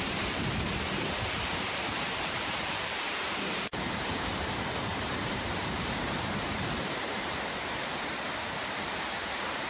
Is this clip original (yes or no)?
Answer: no